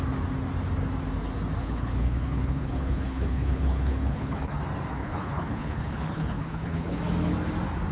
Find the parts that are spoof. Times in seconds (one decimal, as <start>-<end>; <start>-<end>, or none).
1.6-4.6; 5.0-7.0